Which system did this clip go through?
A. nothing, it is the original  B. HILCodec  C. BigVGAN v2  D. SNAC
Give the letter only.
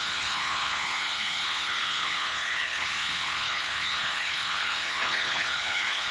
B